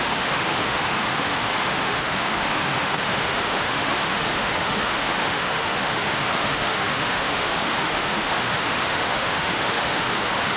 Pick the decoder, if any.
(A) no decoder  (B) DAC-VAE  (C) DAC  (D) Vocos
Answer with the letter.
B